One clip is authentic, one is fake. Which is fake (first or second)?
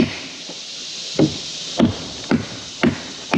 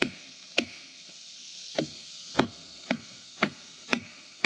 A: second